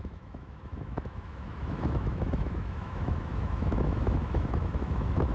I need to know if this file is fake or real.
fake